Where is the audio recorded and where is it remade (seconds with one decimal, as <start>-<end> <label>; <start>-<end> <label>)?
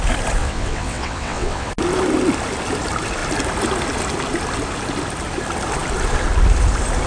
0.0-0.4 recorded; 0.4-1.7 remade; 1.7-7.1 recorded